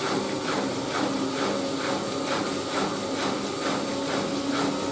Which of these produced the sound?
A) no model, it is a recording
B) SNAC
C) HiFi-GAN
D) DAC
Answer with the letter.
A